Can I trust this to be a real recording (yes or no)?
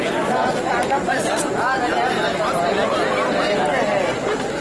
yes